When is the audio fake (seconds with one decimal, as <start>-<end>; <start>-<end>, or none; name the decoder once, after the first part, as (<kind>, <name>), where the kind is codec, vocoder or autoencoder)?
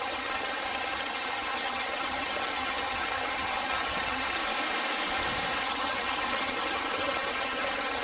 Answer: 0.0-4.4 (vocoder, HiFi-GAN); 5.6-8.0